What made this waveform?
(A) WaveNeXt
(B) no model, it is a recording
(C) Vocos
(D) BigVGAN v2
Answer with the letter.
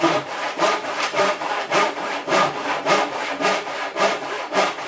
D